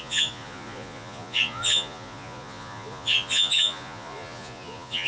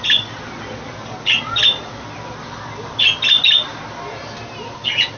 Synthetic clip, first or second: first